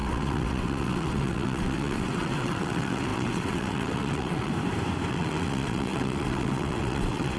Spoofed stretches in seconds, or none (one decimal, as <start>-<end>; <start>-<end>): 0.0-4.5; 5.1-7.4